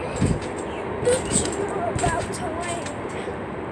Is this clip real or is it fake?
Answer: real